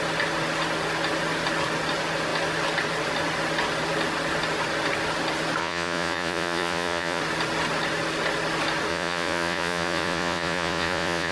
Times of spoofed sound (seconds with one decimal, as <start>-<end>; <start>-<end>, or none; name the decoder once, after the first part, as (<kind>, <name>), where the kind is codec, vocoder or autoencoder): 5.6-7.2 (vocoder, Vocos); 8.9-11.3